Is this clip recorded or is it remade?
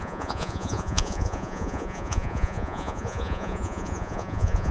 remade